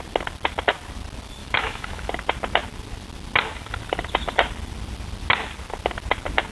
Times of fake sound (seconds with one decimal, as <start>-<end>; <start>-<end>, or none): 1.4-2.1